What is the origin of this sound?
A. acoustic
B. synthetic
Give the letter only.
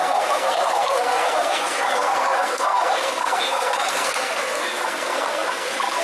B